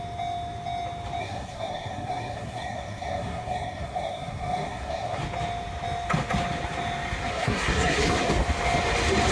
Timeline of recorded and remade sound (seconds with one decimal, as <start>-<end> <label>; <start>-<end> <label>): 0.0-1.2 recorded; 1.2-5.2 remade; 5.2-7.3 recorded; 7.3-8.3 remade; 8.3-9.3 recorded